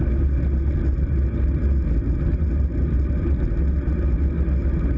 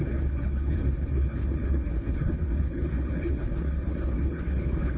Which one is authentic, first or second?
first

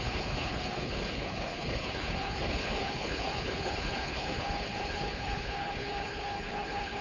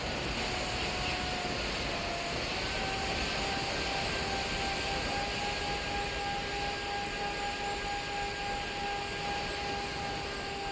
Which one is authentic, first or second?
second